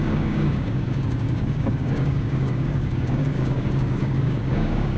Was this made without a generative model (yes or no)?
no